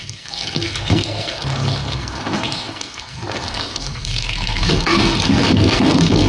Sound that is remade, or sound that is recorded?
remade